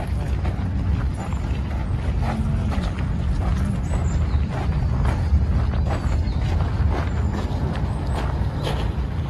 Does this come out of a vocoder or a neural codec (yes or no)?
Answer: no